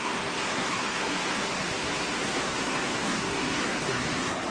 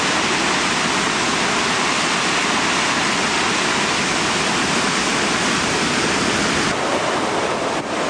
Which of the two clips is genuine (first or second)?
second